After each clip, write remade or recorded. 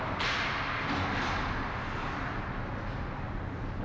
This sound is recorded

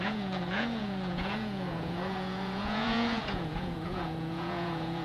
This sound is remade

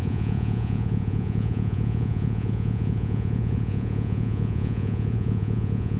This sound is remade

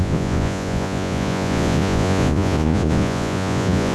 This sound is remade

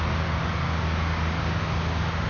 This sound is recorded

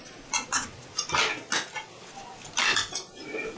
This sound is recorded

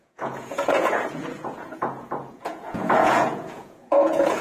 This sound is remade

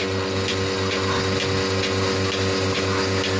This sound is recorded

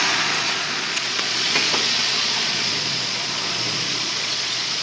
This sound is remade